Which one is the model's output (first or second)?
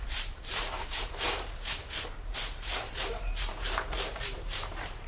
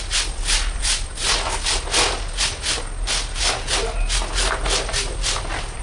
first